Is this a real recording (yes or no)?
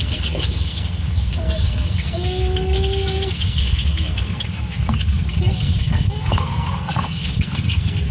no